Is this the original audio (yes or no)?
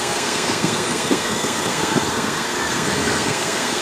no